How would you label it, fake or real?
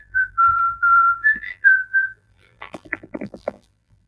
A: fake